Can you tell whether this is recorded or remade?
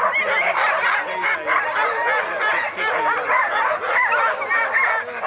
recorded